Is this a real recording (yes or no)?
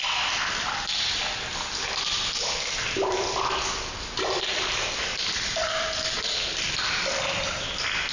yes